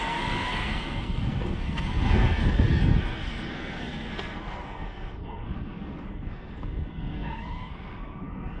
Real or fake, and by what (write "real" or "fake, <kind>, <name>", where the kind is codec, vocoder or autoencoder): fake, codec, SNAC